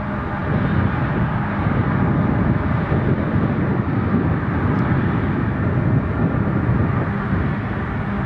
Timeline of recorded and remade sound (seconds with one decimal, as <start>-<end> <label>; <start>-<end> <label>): 0.0-8.3 recorded